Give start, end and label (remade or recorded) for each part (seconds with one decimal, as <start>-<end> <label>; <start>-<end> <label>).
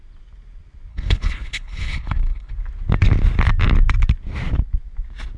0.0-0.9 recorded; 0.9-2.5 remade; 2.5-5.4 recorded